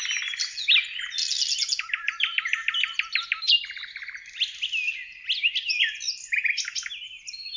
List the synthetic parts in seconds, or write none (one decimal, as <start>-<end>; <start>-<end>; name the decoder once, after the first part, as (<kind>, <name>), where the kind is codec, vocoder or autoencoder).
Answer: none